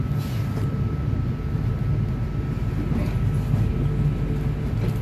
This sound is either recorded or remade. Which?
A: recorded